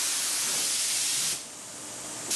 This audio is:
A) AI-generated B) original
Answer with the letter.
B